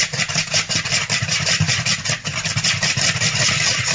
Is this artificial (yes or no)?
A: no